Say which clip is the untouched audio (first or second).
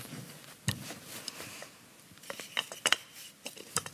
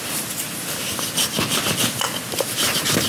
first